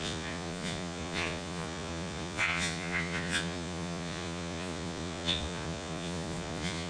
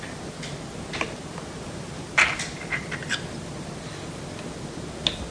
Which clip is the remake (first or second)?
first